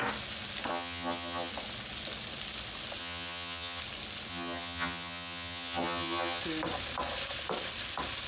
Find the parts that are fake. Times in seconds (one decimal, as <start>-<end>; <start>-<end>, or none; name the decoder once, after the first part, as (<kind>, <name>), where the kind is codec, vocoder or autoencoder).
0.7-1.5 (vocoder, HiFi-GAN); 3.0-3.8; 4.3-6.4